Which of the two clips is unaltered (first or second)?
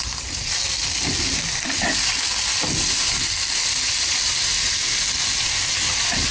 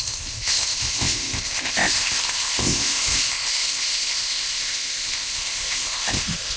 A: first